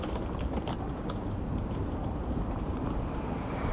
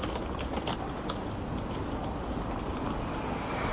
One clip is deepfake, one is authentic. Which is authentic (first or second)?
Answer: second